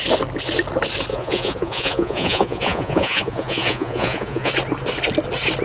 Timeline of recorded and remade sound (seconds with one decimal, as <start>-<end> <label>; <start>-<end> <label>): 0.0-1.1 recorded; 1.1-4.5 remade; 4.5-5.6 recorded